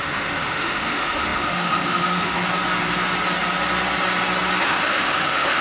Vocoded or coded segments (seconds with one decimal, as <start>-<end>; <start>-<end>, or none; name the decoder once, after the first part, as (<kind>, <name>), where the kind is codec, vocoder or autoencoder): 0.0-2.4 (autoencoder, DAC-VAE); 4.6-5.6